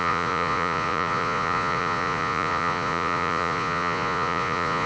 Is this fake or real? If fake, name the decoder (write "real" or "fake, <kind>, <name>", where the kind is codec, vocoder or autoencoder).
fake, vocoder, Vocos